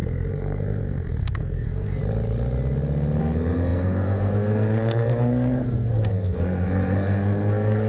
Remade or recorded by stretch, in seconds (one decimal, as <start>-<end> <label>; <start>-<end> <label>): 0.0-2.0 remade; 2.0-3.2 recorded; 3.2-7.9 remade